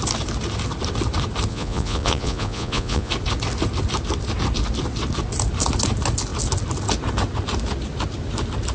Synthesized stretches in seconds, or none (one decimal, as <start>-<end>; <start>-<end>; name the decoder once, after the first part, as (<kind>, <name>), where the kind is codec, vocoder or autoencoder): 1.5-3.1 (vocoder, Vocos)